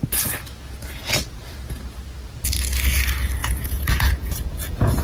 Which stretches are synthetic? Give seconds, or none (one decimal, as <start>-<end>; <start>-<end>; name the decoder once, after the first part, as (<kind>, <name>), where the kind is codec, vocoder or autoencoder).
3.4-5.0 (vocoder, Vocos)